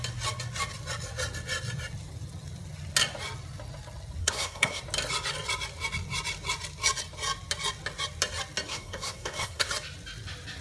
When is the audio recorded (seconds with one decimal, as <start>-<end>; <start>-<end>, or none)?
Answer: 0.0-4.2; 4.8-8.7; 9.7-10.6